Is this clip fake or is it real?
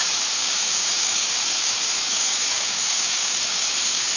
fake